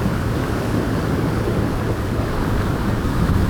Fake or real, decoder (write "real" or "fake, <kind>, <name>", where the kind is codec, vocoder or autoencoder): fake, codec, DAC